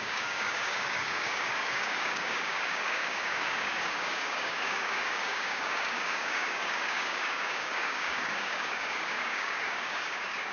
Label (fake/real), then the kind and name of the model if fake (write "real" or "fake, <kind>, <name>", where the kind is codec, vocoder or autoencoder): fake, codec, DAC